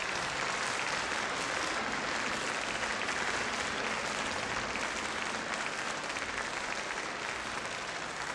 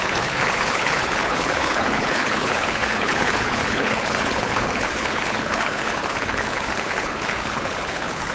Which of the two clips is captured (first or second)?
first